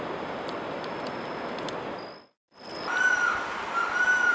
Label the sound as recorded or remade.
recorded